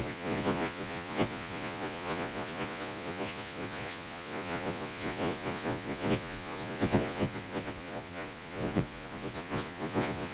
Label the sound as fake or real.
fake